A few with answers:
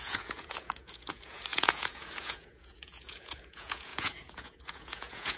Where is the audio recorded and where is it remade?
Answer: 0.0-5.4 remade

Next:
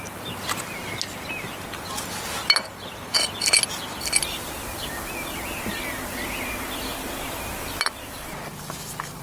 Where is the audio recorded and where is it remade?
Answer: 0.0-9.2 recorded

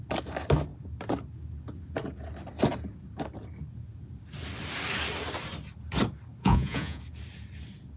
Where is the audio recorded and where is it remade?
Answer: 0.0-6.4 recorded; 6.4-7.0 remade; 7.0-8.0 recorded